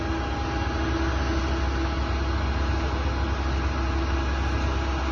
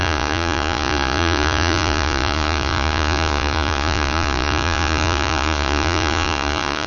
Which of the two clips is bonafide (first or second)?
first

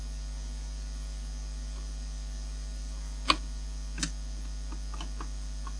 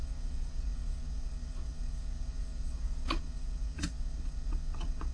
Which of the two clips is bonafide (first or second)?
first